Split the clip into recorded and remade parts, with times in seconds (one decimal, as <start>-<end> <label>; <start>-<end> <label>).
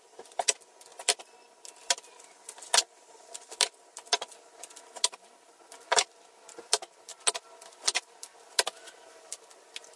0.0-10.0 recorded